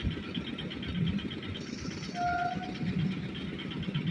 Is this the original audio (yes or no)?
yes